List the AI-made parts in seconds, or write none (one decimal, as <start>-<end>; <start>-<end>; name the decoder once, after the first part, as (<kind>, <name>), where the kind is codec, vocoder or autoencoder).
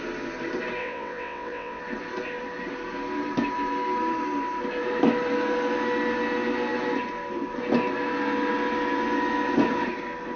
0.8-1.8 (vocoder, WaveNeXt)